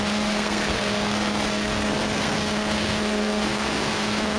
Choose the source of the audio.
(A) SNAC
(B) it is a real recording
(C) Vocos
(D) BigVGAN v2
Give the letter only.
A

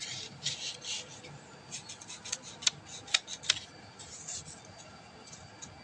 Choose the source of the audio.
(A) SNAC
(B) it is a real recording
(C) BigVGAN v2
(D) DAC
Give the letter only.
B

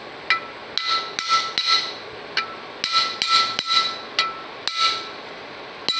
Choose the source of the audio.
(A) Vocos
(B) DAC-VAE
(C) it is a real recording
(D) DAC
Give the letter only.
C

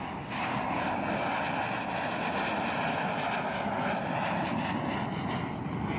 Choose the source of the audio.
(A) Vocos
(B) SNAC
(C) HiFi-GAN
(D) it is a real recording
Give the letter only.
D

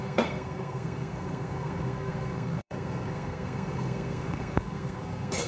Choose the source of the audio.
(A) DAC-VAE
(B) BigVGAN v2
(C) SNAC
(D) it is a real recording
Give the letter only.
C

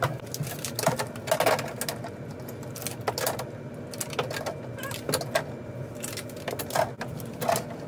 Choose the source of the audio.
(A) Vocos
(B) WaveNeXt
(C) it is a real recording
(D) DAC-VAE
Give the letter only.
C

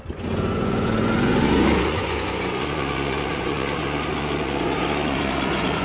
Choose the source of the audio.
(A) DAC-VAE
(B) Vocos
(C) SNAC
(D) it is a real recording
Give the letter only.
B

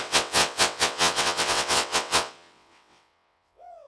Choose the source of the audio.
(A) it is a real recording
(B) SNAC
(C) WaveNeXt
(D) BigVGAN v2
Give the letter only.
C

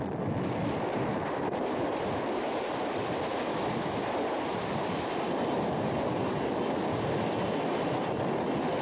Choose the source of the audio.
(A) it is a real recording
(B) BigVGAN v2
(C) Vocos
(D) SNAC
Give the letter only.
B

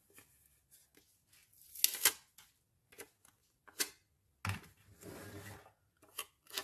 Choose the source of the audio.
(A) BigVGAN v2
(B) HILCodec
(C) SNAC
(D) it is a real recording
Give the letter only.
D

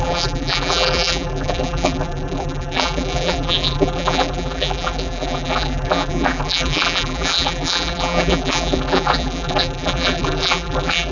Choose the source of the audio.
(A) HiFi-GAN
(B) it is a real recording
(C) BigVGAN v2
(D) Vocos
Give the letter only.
C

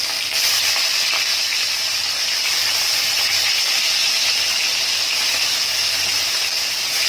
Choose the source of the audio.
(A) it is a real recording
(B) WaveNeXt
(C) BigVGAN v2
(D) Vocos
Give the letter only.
A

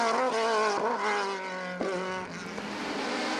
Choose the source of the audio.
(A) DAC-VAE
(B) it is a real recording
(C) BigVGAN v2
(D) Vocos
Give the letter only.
B